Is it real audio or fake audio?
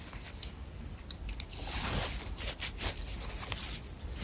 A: real